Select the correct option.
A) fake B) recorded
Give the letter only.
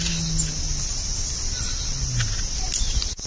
B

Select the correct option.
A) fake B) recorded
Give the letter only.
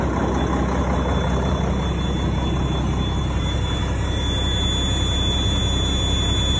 B